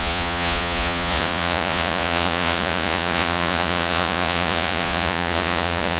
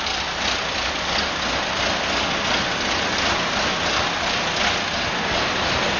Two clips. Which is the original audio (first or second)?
second